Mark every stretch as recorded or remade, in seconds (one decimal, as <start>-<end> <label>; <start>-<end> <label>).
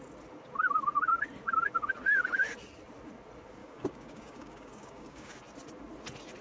0.0-3.6 recorded; 3.6-5.3 remade; 5.3-6.4 recorded